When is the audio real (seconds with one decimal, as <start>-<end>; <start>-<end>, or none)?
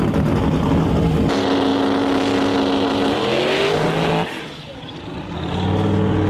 0.0-6.3